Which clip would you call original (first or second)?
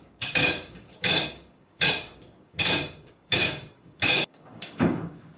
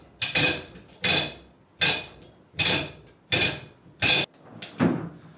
second